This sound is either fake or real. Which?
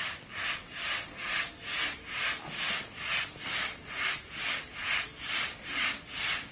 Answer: real